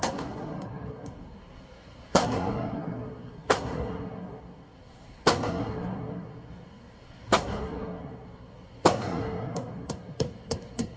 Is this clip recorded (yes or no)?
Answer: no